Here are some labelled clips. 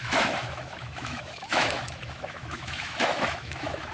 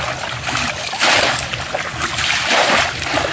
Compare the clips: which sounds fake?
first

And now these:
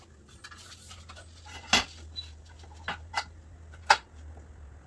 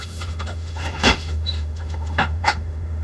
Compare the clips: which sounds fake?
second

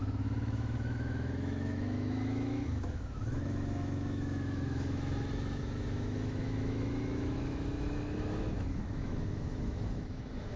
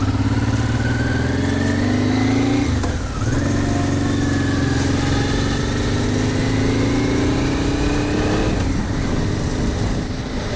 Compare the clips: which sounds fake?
first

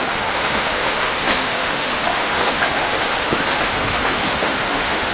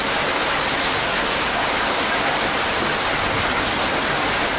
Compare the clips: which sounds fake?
first